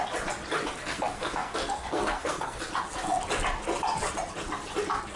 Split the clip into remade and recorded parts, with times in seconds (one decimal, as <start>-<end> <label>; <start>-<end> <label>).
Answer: 0.0-0.8 recorded; 0.8-2.6 remade; 2.6-5.2 recorded